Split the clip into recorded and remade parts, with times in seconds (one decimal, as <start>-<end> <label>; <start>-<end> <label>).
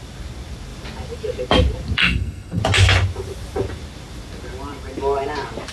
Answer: 0.0-2.0 recorded; 2.0-2.6 remade; 2.6-5.7 recorded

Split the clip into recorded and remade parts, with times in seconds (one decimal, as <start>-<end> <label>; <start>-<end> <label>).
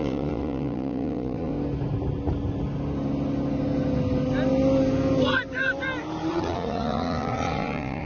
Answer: 0.0-1.5 remade; 1.5-6.3 recorded; 6.3-8.1 remade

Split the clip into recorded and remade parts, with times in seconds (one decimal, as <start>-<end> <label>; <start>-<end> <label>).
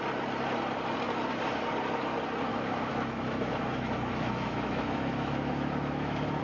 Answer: 0.0-2.5 recorded; 2.5-6.4 remade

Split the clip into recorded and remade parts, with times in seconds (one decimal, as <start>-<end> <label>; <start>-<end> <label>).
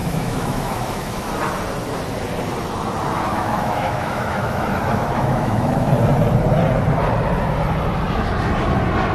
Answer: 0.0-1.3 remade; 1.3-3.3 recorded; 3.3-5.9 remade; 5.9-9.1 recorded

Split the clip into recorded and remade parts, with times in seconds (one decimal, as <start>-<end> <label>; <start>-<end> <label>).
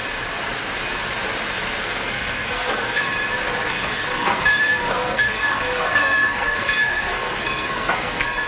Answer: 0.0-1.8 recorded; 1.8-3.1 remade; 3.1-3.7 recorded; 3.7-8.5 remade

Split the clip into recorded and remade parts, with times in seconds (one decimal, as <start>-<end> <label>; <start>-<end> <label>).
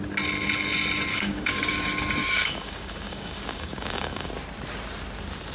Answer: 0.0-1.1 recorded; 1.1-1.7 remade; 1.7-2.2 recorded; 2.2-4.3 remade; 4.3-5.5 recorded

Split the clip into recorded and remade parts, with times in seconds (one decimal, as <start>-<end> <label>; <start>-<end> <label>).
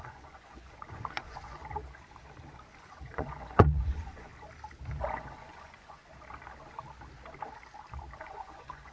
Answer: 0.0-1.6 remade; 1.6-2.8 recorded; 2.8-4.3 remade; 4.3-5.0 recorded; 5.0-6.0 remade; 6.0-8.2 recorded; 8.2-8.9 remade